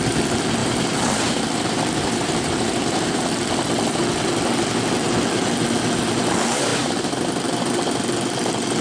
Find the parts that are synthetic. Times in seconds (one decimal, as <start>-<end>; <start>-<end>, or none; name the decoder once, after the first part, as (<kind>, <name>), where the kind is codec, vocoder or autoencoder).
0.6-3.2 (vocoder, BigVGAN v2); 6.7-7.6